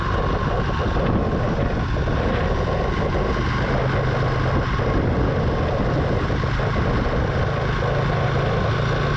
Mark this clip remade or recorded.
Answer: recorded